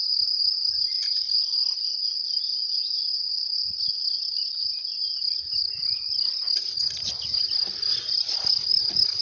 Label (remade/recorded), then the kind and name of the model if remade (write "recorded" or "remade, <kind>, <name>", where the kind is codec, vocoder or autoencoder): recorded